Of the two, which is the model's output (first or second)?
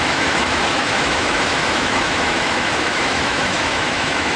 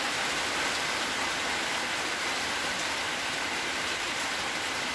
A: first